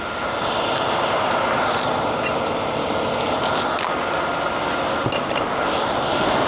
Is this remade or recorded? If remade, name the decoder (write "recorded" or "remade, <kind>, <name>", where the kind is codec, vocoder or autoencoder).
recorded